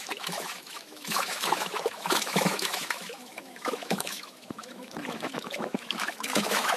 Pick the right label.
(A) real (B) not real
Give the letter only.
B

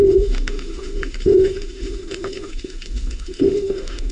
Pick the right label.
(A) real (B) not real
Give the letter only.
B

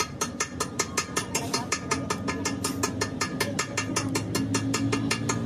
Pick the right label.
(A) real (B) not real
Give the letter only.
A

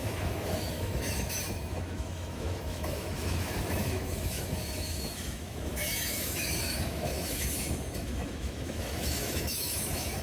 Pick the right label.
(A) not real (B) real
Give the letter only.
A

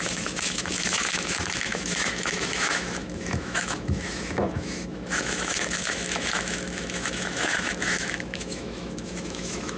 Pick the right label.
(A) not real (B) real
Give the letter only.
A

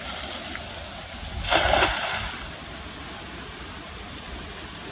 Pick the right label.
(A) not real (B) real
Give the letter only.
B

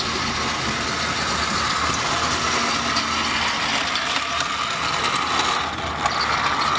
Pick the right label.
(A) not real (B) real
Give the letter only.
B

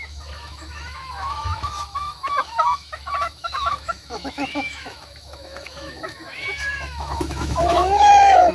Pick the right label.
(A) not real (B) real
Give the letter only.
A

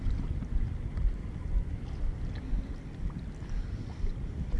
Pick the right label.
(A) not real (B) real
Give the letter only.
B